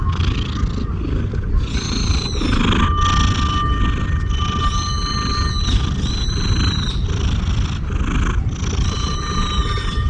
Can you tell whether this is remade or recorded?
recorded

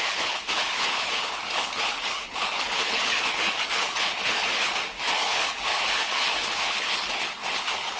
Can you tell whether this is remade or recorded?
remade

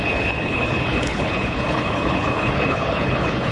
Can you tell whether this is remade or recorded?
remade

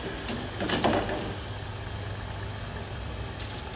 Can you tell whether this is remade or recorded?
recorded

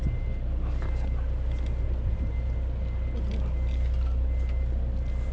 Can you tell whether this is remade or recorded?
recorded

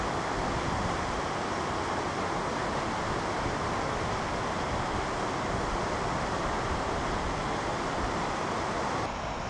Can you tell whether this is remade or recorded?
recorded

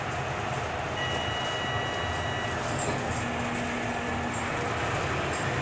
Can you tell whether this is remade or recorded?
recorded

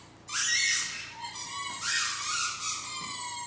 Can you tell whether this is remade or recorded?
recorded